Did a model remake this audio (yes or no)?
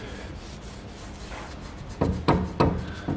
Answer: no